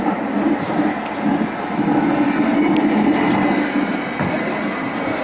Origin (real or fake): real